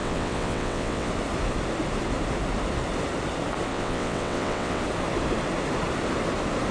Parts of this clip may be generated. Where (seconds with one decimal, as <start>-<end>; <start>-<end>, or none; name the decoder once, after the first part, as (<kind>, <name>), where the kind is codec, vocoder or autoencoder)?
0.0-1.1 (vocoder, WaveNeXt); 3.7-4.8